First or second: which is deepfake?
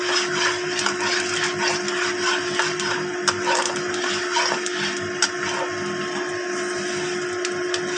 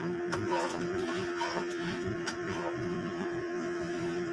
second